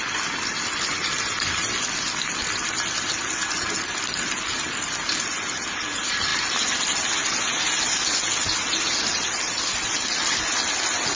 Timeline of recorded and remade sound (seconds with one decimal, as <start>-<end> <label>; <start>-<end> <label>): 0.0-11.2 recorded